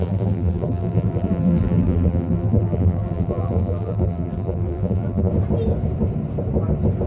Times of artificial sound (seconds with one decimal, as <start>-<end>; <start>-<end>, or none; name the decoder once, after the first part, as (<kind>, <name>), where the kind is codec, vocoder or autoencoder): 0.0-5.3 (vocoder, BigVGAN v2)